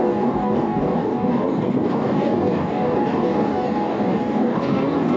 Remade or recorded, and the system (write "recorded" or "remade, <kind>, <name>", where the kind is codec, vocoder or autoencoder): remade, codec, DAC